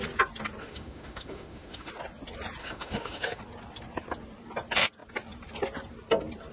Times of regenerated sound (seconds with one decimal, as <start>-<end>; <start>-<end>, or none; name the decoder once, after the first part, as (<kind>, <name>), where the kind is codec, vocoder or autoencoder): 0.6-1.9 (autoencoder, DAC-VAE); 2.6-3.4